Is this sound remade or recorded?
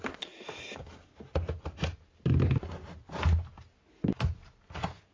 recorded